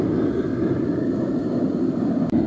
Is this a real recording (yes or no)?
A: yes